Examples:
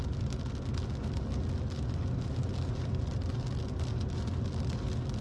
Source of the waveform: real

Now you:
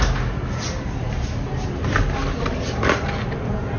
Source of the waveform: real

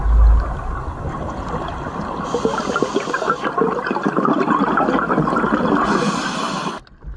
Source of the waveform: real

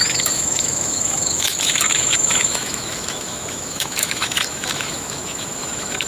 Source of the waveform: fake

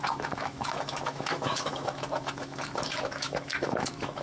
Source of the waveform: fake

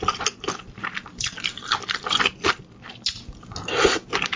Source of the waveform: real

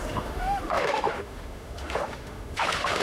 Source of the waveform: fake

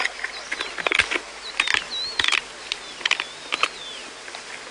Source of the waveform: real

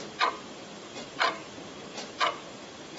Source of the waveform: real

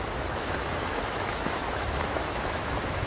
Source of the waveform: fake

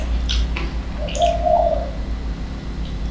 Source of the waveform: real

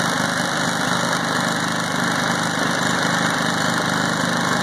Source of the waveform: real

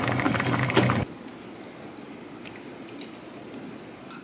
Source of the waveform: real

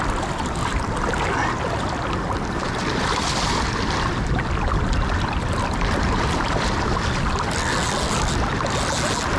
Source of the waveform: real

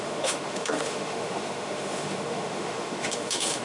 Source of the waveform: fake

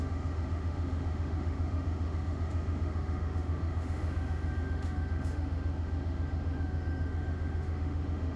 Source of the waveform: fake